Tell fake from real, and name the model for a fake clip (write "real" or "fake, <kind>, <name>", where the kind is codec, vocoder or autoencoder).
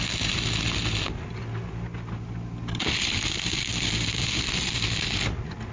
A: real